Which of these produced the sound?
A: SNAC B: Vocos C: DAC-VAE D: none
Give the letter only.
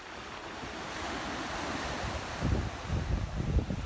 D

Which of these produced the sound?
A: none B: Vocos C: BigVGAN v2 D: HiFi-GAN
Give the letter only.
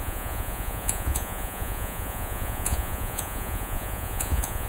B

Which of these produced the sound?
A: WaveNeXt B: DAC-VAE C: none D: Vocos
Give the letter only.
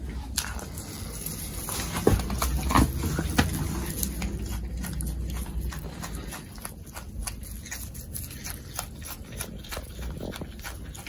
C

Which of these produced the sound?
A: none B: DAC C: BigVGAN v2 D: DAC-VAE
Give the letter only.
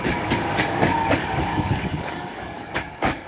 B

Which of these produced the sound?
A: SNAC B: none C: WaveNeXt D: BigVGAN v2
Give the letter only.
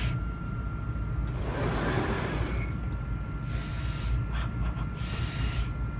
B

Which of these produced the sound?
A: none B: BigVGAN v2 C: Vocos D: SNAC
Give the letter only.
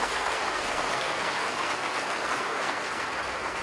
D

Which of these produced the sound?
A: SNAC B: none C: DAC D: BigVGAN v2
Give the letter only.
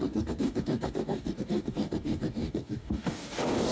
C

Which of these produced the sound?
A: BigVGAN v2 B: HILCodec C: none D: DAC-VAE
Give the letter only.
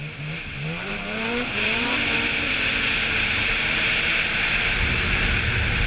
A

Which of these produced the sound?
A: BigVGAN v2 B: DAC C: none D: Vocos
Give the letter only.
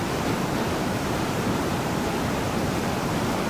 A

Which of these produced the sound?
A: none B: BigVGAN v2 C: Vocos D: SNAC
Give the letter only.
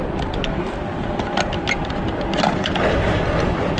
A